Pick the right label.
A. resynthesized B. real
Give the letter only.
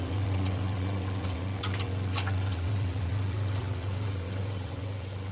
A